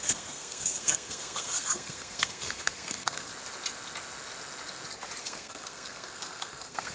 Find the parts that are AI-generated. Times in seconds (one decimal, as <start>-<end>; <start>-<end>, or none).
0.0-3.3; 5.2-6.9